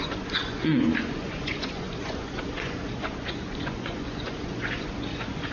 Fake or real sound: fake